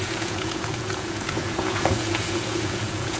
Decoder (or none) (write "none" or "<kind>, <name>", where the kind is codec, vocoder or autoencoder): vocoder, Vocos